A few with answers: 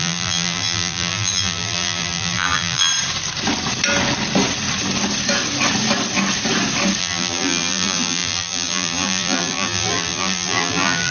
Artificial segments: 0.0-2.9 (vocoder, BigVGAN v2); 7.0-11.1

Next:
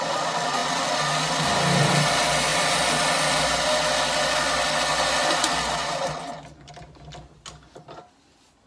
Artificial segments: none

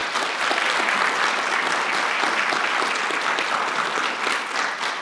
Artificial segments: none

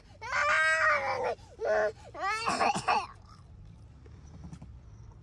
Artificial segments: none